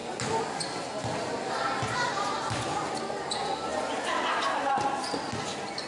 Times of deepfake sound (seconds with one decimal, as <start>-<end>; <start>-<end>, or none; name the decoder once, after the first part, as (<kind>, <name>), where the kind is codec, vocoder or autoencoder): none